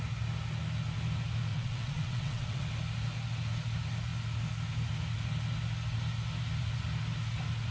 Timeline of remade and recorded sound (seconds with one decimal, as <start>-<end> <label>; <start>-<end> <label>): 0.0-1.5 recorded; 1.5-2.7 remade; 2.7-7.7 recorded